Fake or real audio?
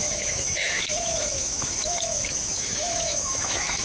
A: fake